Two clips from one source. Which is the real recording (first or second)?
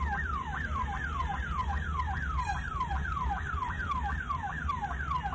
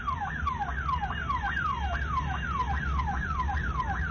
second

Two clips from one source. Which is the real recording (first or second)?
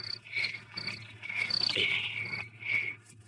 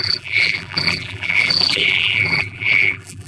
first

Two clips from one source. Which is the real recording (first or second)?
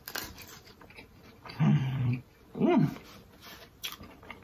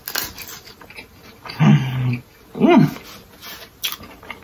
second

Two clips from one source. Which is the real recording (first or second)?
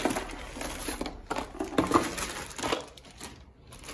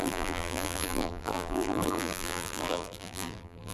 first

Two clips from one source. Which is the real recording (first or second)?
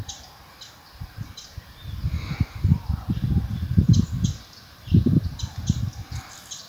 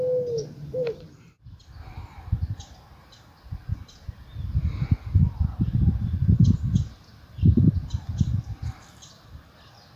second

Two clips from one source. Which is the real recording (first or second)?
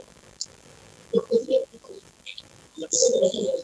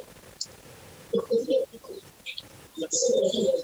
second